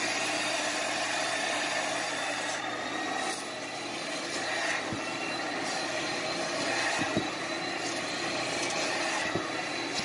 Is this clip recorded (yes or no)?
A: yes